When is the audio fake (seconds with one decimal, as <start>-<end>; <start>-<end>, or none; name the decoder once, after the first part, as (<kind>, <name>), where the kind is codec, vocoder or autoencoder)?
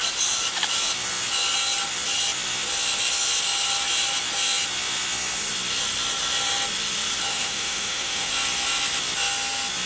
7.3-8.3 (autoencoder, DAC-VAE)